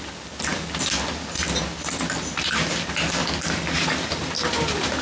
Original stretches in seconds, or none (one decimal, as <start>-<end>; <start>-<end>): 0.0-5.0